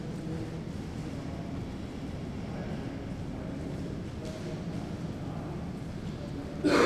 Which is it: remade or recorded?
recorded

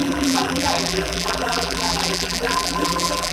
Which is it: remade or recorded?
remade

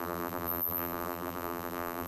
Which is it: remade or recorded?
remade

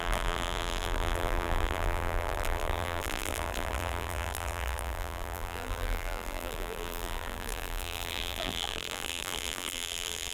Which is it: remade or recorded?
remade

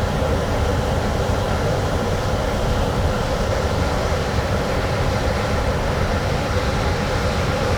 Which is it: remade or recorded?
remade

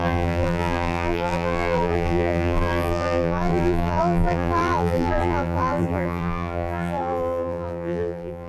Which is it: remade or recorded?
remade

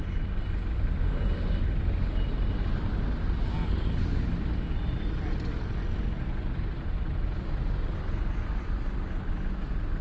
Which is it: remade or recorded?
recorded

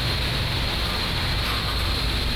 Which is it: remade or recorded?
recorded